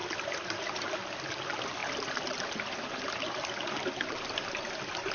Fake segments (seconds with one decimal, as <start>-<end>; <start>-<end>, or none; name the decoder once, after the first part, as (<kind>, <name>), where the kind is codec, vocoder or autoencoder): none